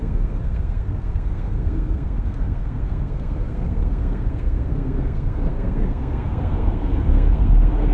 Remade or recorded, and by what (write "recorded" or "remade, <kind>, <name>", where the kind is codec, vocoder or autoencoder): remade, codec, SNAC